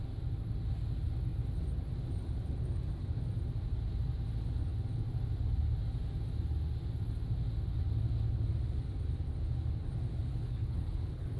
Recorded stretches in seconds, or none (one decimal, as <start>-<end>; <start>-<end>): 0.0-10.3